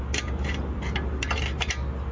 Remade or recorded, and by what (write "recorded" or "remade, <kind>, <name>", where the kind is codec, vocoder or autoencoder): recorded